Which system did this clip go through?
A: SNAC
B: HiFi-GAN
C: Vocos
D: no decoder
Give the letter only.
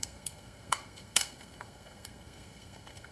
A